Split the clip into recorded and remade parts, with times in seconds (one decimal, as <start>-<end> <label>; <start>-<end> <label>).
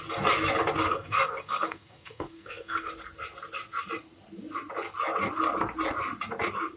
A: 0.0-0.9 recorded; 0.9-2.9 remade; 2.9-6.8 recorded